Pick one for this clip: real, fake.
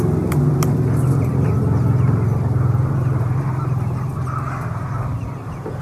real